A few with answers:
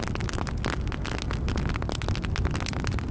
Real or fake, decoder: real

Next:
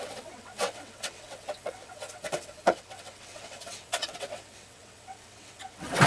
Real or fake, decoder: fake, vocoder, WaveNeXt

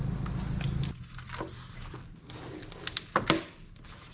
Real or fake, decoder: real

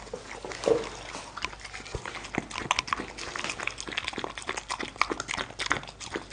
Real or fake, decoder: real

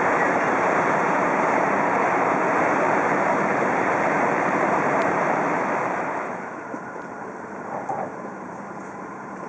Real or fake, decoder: fake, vocoder, BigVGAN v2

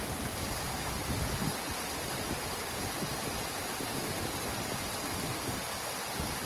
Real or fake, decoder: real